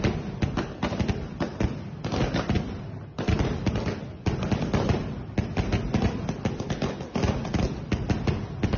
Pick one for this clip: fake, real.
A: real